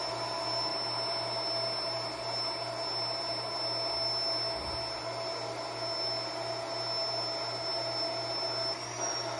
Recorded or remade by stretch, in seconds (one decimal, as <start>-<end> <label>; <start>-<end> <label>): 0.0-9.4 recorded